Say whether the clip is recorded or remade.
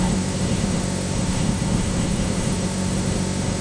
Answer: remade